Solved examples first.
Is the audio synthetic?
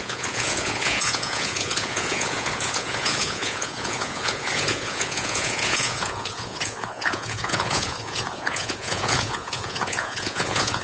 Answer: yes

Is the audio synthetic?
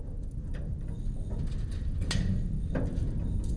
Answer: no